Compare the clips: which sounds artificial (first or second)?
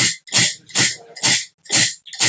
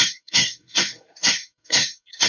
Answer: second